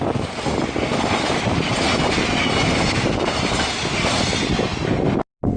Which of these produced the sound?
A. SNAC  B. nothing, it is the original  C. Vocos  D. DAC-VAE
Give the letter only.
B